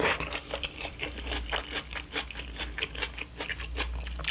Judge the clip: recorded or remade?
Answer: recorded